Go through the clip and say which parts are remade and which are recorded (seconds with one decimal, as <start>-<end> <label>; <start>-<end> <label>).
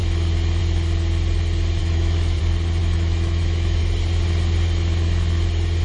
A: 0.0-1.8 recorded; 1.8-2.4 remade; 2.4-2.8 recorded; 2.8-3.8 remade; 3.8-5.8 recorded